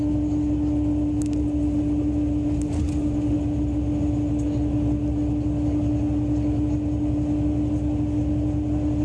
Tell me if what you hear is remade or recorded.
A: recorded